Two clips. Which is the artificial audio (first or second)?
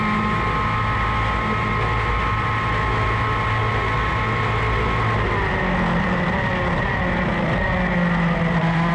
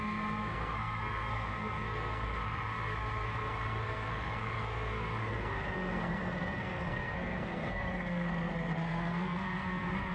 second